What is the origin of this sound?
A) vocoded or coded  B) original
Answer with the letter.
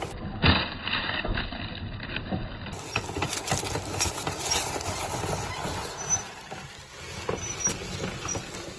B